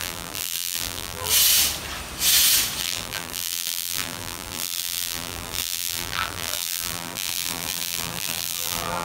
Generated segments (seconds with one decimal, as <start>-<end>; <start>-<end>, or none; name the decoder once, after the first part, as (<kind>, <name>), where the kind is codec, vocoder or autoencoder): 0.0-1.3 (vocoder, BigVGAN v2); 2.8-9.0